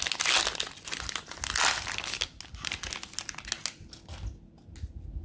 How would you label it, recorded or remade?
recorded